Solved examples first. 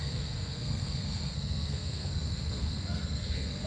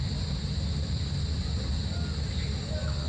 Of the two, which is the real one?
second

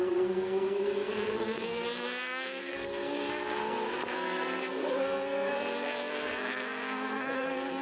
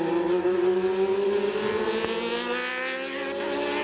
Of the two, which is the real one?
second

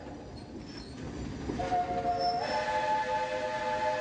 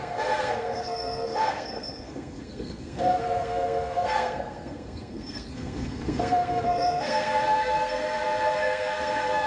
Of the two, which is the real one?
first